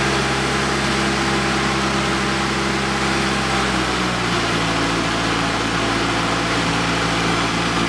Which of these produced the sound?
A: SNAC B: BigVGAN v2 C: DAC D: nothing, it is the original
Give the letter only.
D